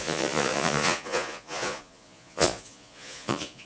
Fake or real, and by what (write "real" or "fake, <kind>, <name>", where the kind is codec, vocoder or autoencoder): fake, vocoder, Vocos